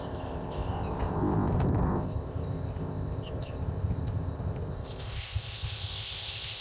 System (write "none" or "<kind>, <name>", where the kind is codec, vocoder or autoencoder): codec, ZipCodec